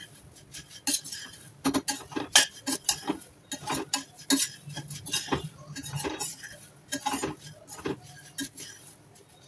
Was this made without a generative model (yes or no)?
yes